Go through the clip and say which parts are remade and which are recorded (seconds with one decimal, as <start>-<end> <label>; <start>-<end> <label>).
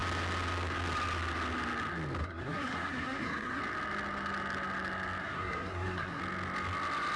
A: 0.0-2.2 recorded; 2.2-3.6 remade; 3.6-5.2 recorded; 5.2-6.2 remade; 6.2-7.2 recorded